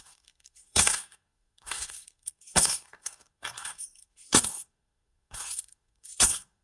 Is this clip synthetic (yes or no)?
yes